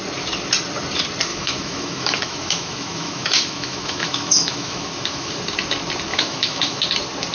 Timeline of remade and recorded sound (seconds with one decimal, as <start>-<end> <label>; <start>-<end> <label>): 0.0-1.3 recorded; 1.3-5.3 remade; 5.3-6.1 recorded; 6.1-6.8 remade; 6.8-7.3 recorded